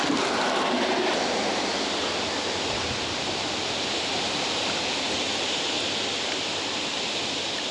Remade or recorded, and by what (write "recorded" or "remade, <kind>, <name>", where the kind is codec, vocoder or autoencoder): recorded